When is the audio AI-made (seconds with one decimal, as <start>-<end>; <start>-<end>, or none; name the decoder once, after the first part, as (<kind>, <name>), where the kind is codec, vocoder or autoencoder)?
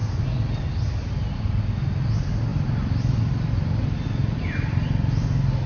none